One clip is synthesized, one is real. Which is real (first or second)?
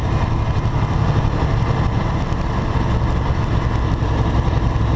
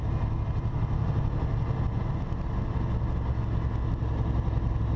second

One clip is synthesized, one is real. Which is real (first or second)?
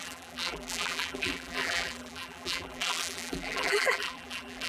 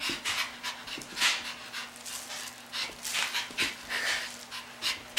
second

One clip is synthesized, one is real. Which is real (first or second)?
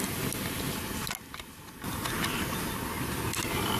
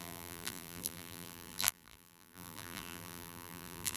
first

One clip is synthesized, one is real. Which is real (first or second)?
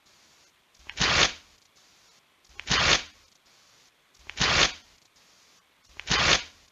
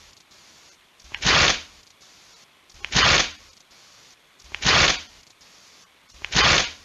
first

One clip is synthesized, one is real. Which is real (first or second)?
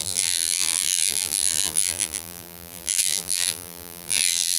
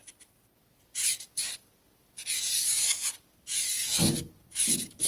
second